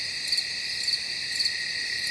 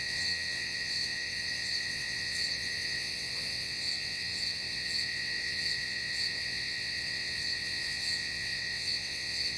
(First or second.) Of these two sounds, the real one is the first